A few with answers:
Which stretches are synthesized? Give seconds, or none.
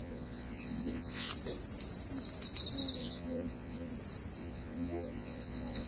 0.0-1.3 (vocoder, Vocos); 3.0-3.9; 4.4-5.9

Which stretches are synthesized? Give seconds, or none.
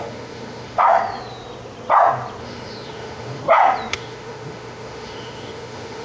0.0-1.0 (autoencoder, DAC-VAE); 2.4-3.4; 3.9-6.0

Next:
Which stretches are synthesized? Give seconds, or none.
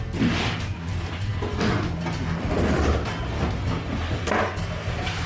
none